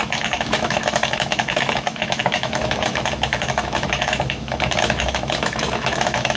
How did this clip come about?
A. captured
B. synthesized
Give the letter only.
B